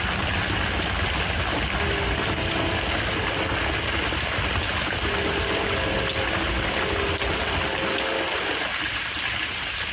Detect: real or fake real